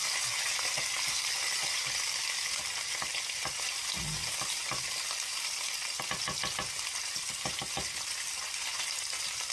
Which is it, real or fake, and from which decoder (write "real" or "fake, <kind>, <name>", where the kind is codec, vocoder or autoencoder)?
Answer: real